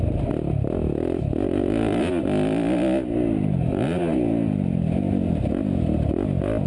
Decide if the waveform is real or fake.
real